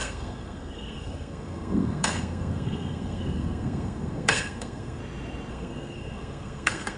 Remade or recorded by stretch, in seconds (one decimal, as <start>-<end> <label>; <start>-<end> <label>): 0.0-5.0 remade; 5.0-5.5 recorded; 5.5-7.0 remade